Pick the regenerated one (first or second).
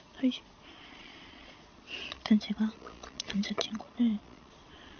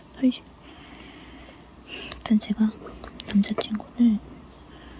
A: first